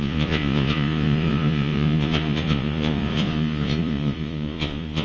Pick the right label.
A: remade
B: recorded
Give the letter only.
A